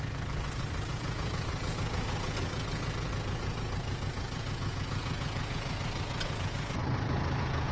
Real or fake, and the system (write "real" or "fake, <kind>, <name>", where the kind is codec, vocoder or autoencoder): fake, vocoder, Vocos